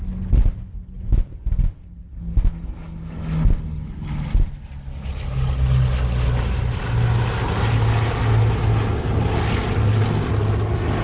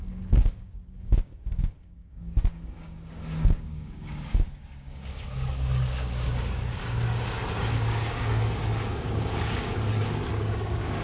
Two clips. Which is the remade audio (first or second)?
second